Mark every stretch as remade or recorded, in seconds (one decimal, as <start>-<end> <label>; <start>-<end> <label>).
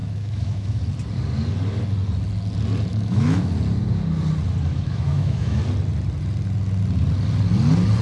0.0-0.8 remade; 0.8-2.9 recorded; 2.9-3.5 remade; 3.5-4.7 recorded; 4.7-5.6 remade; 5.6-8.0 recorded